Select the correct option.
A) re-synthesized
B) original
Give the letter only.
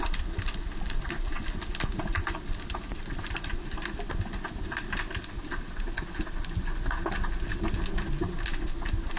B